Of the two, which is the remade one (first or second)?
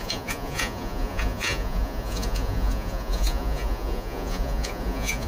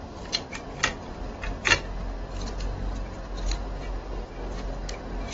first